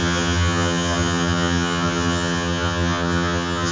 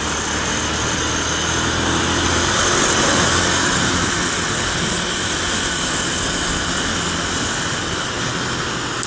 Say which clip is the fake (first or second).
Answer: first